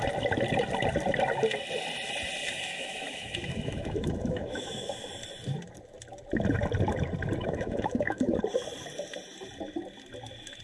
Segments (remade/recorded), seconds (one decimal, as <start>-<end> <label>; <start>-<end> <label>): 0.0-2.4 recorded; 2.4-5.1 remade; 5.1-7.4 recorded; 7.4-8.4 remade; 8.4-10.6 recorded